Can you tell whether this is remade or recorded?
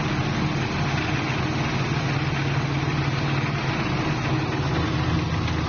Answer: recorded